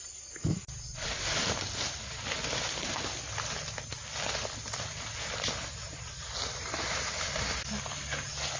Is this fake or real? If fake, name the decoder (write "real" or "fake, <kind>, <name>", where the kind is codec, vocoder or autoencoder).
real